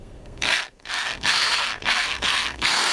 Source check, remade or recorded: remade